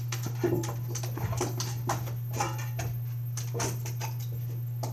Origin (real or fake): fake